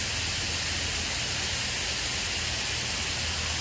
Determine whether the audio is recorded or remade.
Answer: recorded